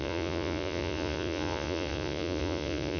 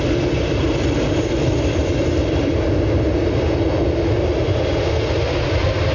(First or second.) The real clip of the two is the second